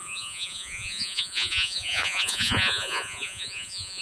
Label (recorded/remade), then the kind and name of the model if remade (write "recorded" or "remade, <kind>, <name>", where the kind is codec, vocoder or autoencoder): remade, vocoder, Vocos